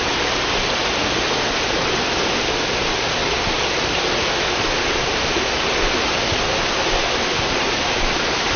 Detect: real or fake real